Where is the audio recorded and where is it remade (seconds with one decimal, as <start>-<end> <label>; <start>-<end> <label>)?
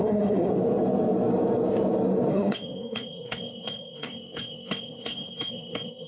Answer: 0.0-0.5 remade; 0.5-2.3 recorded; 2.3-6.1 remade